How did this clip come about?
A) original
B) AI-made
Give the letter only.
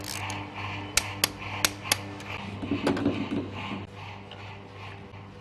A